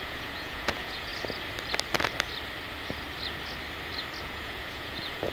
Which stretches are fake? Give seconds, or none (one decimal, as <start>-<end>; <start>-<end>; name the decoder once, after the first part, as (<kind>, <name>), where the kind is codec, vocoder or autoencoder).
0.0-1.1 (vocoder, Vocos); 4.2-5.3